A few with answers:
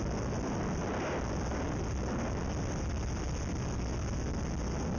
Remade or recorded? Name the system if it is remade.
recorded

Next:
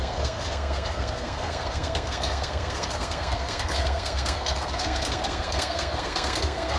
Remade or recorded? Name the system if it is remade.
remade, codec, SNAC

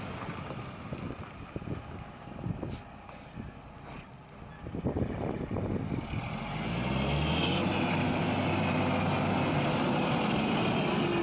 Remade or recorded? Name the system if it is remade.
recorded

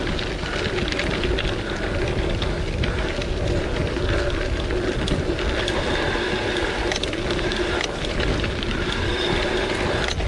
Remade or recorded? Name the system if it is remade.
recorded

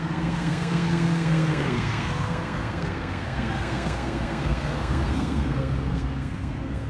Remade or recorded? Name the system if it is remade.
remade, codec, SNAC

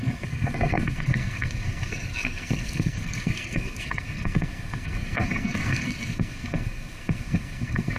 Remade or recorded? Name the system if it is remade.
remade, codec, SNAC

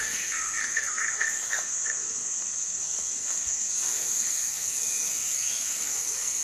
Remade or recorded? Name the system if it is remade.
remade, codec, SNAC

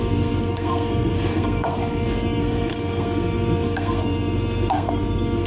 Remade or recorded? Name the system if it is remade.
remade, codec, SNAC